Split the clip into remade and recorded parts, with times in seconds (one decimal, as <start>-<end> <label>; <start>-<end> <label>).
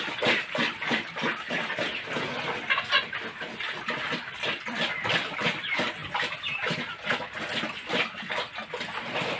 0.0-9.4 recorded